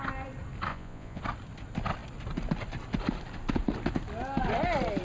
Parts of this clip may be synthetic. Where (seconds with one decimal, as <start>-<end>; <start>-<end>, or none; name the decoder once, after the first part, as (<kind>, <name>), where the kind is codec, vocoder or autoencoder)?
0.7-1.2 (vocoder, Vocos)